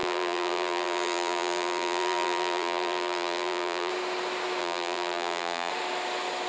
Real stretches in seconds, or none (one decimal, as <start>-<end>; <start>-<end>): 3.9-4.6; 5.7-6.5

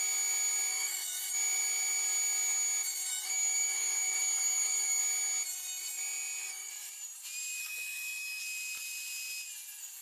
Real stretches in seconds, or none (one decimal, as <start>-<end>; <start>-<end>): 0.0-0.7; 1.3-3.1; 5.0-6.4; 6.9-7.6; 8.4-10.0